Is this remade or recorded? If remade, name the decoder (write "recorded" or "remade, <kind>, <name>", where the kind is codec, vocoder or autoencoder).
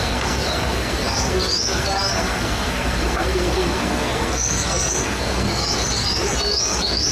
remade, codec, SNAC